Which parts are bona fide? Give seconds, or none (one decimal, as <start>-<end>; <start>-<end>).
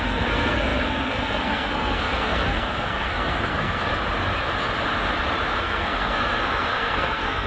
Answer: 3.9-5.6